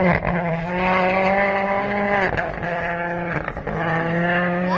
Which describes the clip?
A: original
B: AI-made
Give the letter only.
A